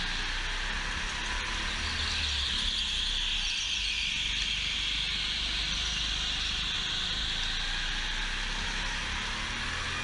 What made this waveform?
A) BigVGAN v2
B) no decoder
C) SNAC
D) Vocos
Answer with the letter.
B